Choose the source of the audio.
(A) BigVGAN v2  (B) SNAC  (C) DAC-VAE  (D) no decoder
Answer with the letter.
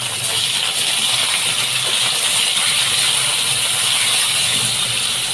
D